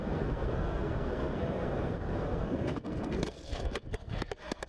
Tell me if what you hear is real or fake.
fake